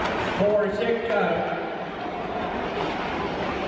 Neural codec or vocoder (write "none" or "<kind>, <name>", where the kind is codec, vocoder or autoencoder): none